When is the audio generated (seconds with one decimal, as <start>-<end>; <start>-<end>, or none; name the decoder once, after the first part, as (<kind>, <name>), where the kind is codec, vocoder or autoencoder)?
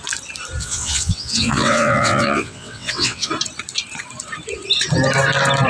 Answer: 0.6-3.3 (vocoder, WaveNeXt)